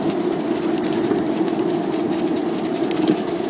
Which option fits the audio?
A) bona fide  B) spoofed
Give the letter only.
A